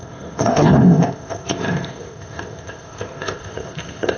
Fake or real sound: fake